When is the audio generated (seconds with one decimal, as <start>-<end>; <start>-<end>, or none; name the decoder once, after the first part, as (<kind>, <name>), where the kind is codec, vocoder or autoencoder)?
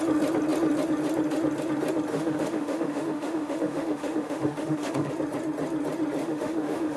2.1-5.1 (autoencoder, DAC-VAE); 6.2-7.0